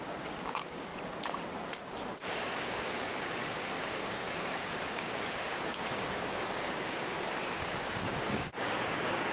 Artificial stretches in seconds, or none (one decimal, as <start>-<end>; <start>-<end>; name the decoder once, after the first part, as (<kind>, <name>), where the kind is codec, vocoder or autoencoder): 0.0-0.9 (codec, DAC); 2.2-9.3